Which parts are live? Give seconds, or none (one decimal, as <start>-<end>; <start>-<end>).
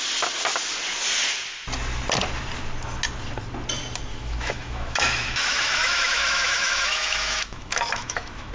0.0-4.1